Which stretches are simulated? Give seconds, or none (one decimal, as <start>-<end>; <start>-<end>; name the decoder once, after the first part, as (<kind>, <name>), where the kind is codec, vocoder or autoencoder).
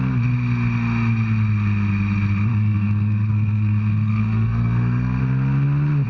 2.5-5.2 (codec, SNAC)